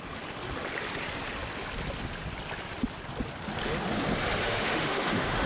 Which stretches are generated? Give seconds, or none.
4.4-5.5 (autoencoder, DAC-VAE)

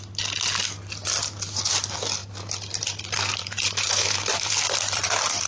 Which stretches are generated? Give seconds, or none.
3.4-4.5 (autoencoder, DAC-VAE)

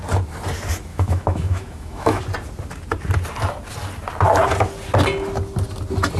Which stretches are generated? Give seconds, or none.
0.9-2.2 (autoencoder, DAC-VAE)

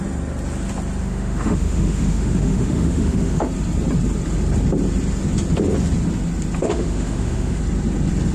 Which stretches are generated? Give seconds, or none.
1.0-3.5 (autoencoder, DAC-VAE); 6.6-7.6

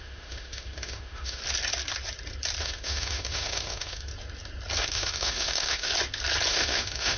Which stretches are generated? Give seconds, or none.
0.0-1.4 (autoencoder, DAC-VAE); 2.6-4.1; 4.8-5.9; 6.5-7.2

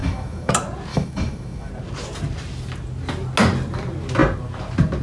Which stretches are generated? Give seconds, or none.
0.0-0.5 (autoencoder, DAC-VAE); 0.9-1.7

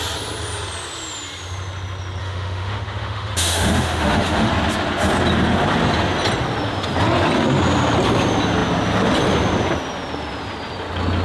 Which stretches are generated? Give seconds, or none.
2.2-4.5 (autoencoder, DAC-VAE)

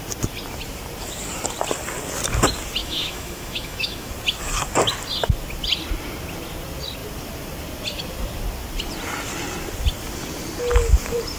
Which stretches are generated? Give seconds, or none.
2.8-4.1 (autoencoder, DAC-VAE)